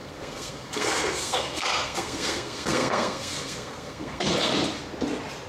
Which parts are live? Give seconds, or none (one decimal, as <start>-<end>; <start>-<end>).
4.5-5.5